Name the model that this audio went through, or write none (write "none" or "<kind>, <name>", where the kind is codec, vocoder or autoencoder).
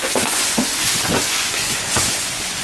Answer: vocoder, Vocos